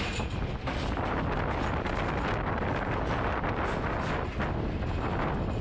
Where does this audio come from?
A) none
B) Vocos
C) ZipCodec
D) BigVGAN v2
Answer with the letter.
A